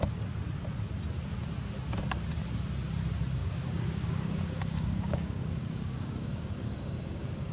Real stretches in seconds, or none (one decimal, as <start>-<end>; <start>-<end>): 0.0-3.4